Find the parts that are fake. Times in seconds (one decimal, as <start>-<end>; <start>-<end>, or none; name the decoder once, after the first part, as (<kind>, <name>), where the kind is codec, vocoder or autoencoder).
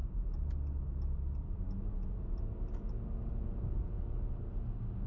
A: none